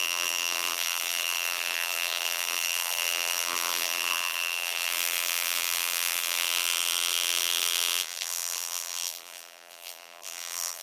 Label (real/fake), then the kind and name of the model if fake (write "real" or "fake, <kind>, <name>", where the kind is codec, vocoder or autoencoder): fake, vocoder, BigVGAN v2